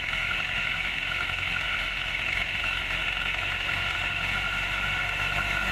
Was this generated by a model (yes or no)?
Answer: yes